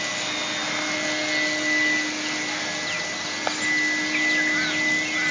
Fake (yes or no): no